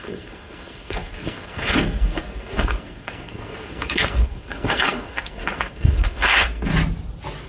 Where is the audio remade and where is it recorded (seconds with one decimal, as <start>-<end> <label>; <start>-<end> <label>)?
0.0-6.7 remade; 6.7-7.5 recorded